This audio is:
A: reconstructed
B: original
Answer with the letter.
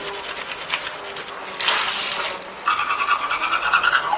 B